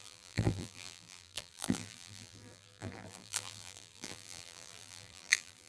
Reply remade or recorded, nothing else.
remade